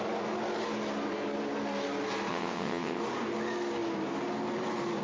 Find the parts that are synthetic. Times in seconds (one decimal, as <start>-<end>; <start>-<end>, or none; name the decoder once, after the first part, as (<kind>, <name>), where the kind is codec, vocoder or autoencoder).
2.3-3.0 (vocoder, WaveNeXt)

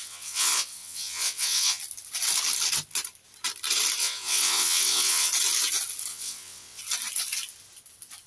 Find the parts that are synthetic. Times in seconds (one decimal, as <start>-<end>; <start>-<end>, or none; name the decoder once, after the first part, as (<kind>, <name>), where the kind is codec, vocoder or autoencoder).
0.0-1.8 (vocoder, WaveNeXt); 4.0-5.3; 6.1-6.8

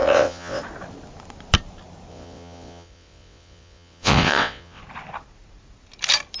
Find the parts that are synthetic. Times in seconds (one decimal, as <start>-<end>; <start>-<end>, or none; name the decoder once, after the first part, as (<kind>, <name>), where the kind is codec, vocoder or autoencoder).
0.0-0.6 (vocoder, WaveNeXt); 2.1-4.8

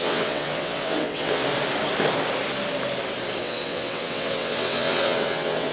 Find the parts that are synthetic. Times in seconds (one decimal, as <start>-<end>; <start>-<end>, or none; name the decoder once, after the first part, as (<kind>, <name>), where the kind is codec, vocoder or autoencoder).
0.0-1.4 (vocoder, WaveNeXt); 3.4-5.7

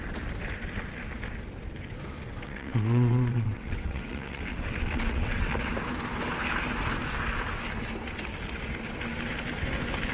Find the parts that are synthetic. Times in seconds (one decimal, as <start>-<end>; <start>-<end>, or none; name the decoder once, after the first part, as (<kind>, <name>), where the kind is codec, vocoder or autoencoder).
2.3-5.7 (vocoder, WaveNeXt)

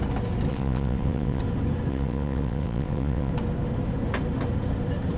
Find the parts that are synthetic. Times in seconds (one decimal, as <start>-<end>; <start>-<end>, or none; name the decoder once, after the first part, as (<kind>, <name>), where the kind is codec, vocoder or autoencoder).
0.5-1.4 (vocoder, WaveNeXt); 1.9-3.3

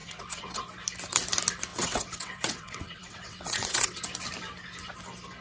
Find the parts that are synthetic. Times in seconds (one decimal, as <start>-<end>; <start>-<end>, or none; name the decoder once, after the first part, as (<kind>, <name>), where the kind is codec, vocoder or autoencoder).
0.0-0.6 (vocoder, WaveNeXt); 1.7-4.0

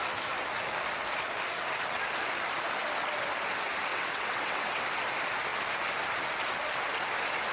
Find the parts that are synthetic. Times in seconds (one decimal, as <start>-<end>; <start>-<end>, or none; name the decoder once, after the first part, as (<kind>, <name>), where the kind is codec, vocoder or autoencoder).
3.9-4.8 (vocoder, WaveNeXt)